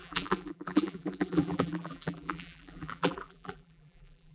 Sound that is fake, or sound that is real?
fake